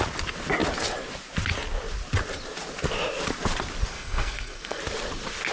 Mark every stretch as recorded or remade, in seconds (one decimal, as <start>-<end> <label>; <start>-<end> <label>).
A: 0.0-3.9 recorded; 3.9-4.8 remade; 4.8-5.5 recorded